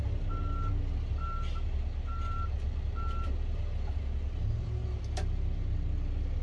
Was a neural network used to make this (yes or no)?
no